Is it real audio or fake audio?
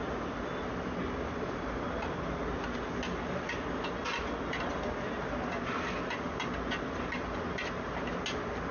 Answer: real